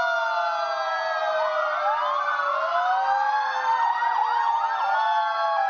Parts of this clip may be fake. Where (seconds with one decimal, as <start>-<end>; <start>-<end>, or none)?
none

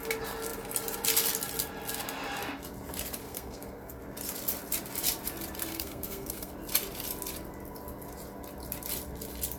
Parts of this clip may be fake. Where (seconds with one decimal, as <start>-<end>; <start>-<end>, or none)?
3.2-4.0; 5.7-6.5

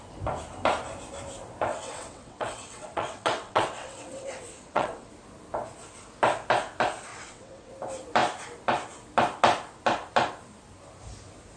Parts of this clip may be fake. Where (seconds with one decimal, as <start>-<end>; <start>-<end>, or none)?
1.7-5.1; 7.1-7.7

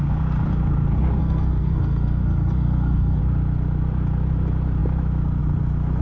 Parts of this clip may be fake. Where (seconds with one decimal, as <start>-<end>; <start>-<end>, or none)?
1.2-3.2

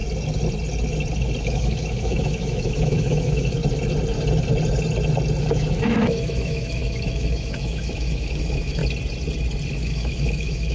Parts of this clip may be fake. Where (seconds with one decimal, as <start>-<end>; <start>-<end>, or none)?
1.4-3.6; 5.4-8.8; 9.7-10.7

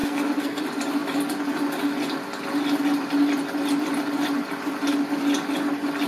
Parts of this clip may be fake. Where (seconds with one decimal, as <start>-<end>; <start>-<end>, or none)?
0.0-0.6

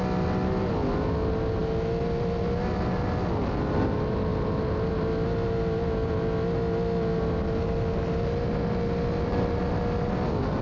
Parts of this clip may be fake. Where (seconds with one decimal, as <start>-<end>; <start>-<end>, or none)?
none

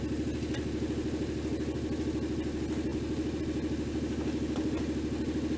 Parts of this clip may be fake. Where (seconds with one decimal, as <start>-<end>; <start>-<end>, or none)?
none